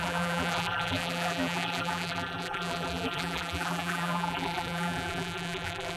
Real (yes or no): no